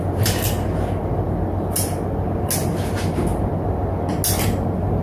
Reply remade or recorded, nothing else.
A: recorded